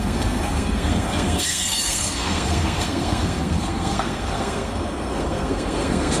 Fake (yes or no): yes